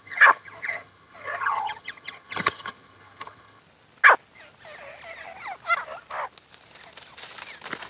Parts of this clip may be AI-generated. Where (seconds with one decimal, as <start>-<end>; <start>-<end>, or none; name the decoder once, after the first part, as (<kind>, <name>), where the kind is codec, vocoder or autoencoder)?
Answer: 0.0-3.6 (vocoder, HiFi-GAN)